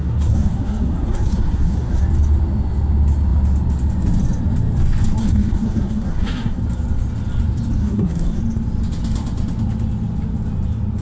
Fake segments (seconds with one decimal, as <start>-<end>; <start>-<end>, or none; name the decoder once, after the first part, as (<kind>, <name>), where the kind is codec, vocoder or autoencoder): 0.0-2.0 (codec, SNAC); 5.2-6.6; 7.8-8.4